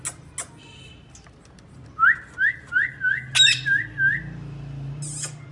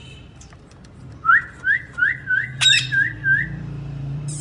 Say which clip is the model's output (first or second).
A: second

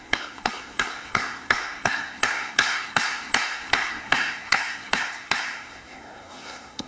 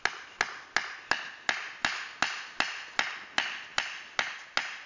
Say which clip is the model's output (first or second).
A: first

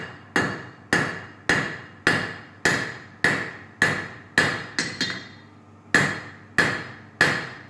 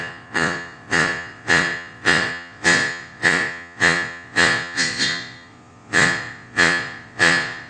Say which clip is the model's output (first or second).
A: second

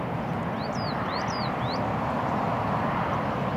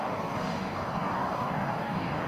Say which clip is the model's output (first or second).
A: second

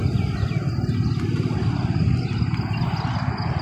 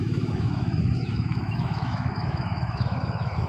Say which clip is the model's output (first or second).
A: second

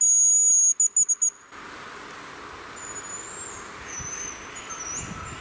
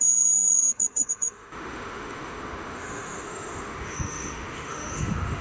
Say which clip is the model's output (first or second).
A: second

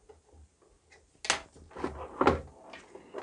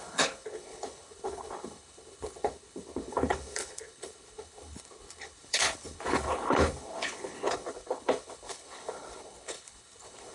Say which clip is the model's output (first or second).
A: second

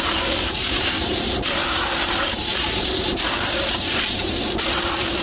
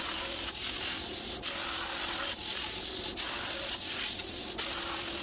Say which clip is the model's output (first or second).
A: first